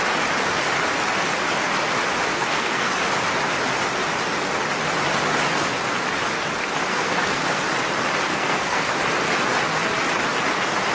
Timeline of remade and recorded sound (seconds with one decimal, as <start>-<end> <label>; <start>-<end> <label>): 0.0-2.3 recorded; 2.3-2.9 remade; 2.9-6.9 recorded; 6.9-7.6 remade; 7.6-8.3 recorded; 8.3-8.9 remade; 8.9-10.9 recorded